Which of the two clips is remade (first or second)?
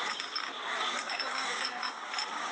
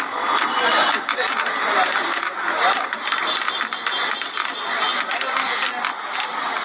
first